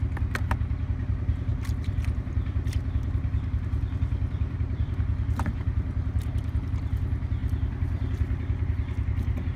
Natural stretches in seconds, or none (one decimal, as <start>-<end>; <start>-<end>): 0.0-1.5; 6.6-7.4